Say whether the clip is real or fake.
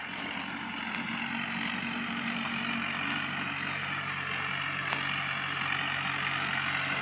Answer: real